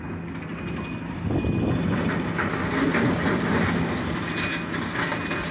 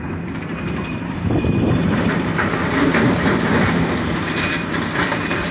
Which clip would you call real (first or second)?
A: first